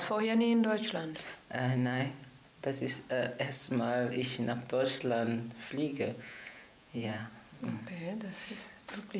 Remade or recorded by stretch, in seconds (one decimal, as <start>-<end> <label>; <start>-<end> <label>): 0.0-5.9 recorded; 5.9-7.2 remade; 7.2-9.2 recorded